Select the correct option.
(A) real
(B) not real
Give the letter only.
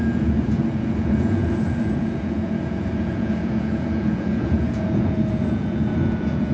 B